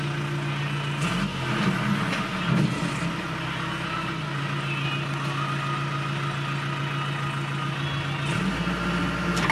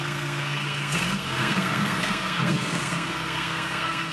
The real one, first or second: first